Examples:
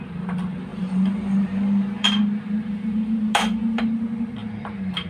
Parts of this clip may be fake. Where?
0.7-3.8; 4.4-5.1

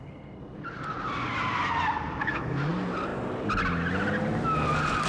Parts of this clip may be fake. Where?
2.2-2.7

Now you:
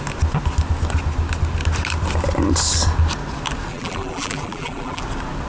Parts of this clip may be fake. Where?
3.7-5.0

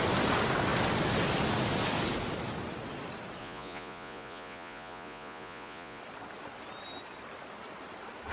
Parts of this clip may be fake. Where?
3.4-6.0